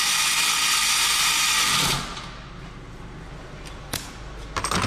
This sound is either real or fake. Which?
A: real